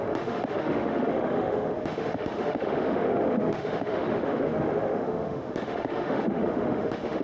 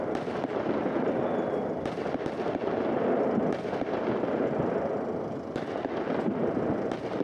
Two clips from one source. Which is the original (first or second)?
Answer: second